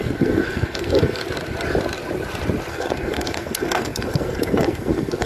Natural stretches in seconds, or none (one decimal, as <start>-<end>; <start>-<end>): 1.2-2.7